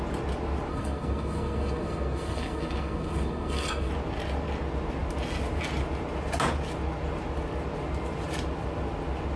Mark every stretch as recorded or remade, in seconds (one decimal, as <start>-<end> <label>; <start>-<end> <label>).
0.0-0.7 recorded; 0.7-3.9 remade; 3.9-9.4 recorded